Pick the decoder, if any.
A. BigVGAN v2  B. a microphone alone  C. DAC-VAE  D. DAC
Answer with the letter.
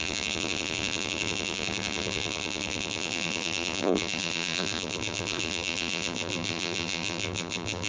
A